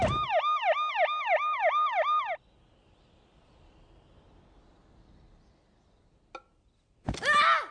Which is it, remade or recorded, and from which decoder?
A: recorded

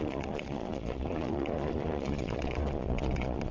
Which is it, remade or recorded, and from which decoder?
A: remade, vocoder, Vocos